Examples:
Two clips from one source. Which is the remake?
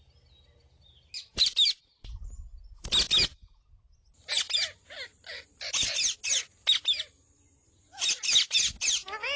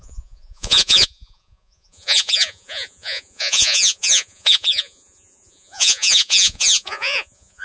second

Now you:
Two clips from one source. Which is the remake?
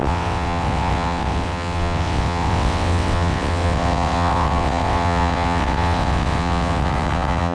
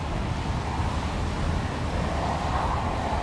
first